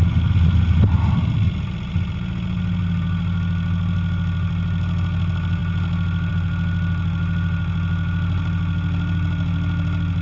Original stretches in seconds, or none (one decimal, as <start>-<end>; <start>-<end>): 0.0-10.2